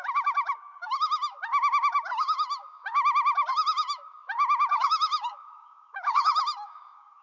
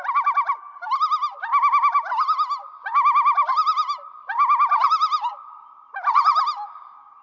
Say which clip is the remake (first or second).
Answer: first